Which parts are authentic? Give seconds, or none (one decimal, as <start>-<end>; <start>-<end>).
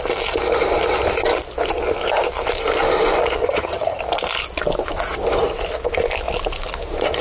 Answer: 0.0-3.4; 4.0-7.2